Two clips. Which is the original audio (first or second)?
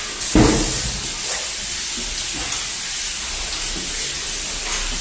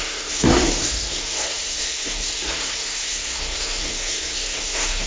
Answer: first